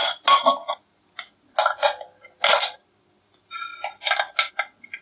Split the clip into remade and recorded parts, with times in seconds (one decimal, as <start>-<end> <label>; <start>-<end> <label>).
0.0-5.0 recorded

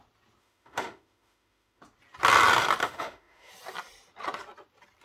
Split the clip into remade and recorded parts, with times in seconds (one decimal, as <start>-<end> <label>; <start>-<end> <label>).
0.0-0.4 recorded; 0.4-1.8 remade; 1.8-2.8 recorded; 2.8-3.5 remade; 3.5-5.0 recorded

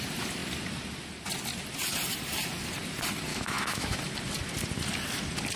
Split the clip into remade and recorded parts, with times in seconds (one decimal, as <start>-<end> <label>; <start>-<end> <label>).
0.0-3.3 recorded; 3.3-4.0 remade; 4.0-5.6 recorded

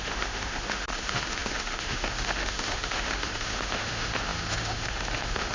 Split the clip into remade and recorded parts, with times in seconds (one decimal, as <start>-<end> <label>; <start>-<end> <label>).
0.0-5.5 remade

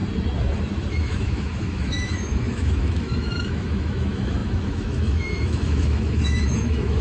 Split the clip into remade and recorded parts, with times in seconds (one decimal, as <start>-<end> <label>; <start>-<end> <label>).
0.0-0.9 recorded; 0.9-7.0 remade